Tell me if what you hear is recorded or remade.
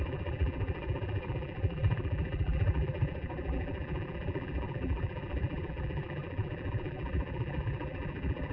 remade